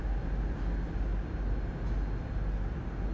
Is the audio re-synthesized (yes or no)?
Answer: no